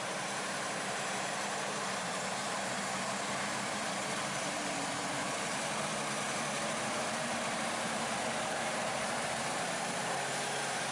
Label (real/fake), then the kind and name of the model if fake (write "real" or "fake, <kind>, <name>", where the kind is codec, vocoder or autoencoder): fake, vocoder, BigVGAN v2